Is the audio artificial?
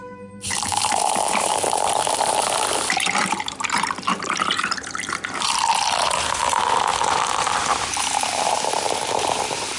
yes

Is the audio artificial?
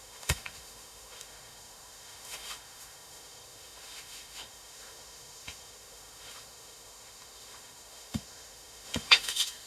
yes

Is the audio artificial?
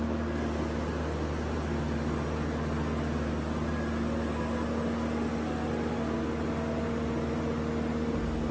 no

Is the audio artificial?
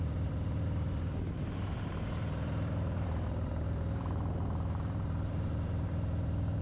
yes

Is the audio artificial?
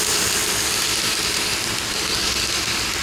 yes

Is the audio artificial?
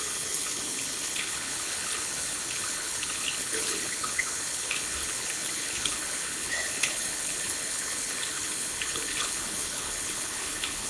yes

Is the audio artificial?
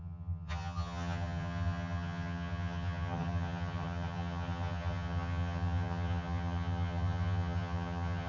yes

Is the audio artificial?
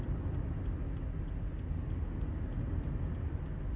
no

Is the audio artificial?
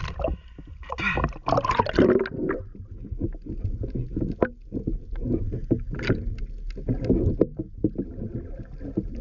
no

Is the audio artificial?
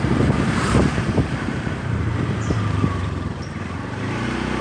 yes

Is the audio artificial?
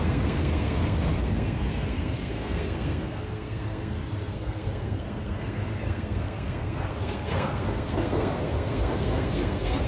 yes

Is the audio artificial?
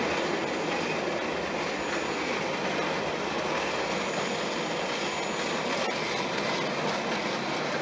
no